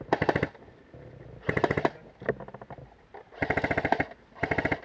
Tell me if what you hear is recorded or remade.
recorded